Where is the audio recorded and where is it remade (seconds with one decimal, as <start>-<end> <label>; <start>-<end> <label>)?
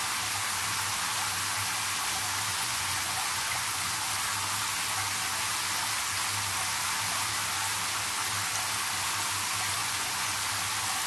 0.0-2.5 recorded; 2.5-3.9 remade; 3.9-9.8 recorded; 9.8-10.4 remade; 10.4-11.1 recorded